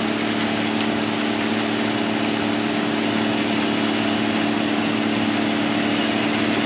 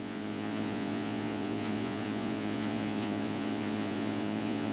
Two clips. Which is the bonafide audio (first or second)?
first